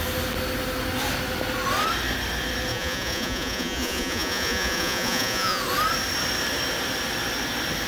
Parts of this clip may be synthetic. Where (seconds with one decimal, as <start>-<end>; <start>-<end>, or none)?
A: 2.7-5.6